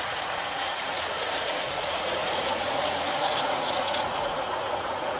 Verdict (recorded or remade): remade